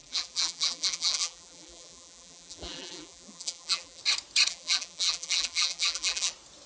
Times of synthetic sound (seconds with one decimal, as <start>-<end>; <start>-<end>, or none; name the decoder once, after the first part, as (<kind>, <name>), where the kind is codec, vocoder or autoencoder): 0.0-4.0 (vocoder, BigVGAN v2); 4.5-6.3